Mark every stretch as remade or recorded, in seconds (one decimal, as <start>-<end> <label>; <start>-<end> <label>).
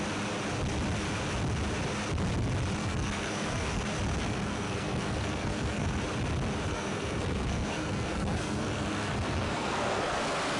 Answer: 0.0-2.8 recorded; 2.8-3.8 remade; 3.8-4.2 recorded; 4.2-6.0 remade; 6.0-6.7 recorded; 6.7-10.2 remade; 10.2-10.6 recorded